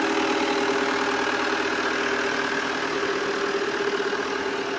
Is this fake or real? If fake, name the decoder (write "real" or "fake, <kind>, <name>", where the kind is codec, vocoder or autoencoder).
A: real